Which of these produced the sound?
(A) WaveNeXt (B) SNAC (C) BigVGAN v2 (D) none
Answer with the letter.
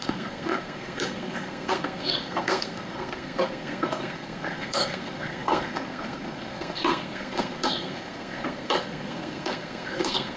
B